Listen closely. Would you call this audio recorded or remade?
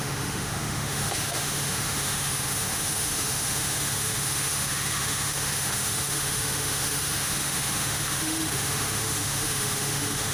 remade